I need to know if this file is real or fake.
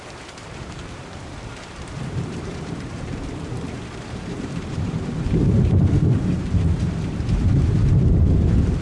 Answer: fake